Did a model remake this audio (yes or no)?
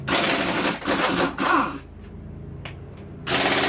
no